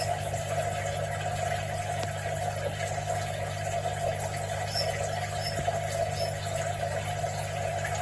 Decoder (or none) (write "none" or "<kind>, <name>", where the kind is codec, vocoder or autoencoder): none